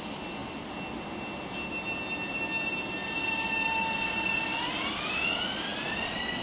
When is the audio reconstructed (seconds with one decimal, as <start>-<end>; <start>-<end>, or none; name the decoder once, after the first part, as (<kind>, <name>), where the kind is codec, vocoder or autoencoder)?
none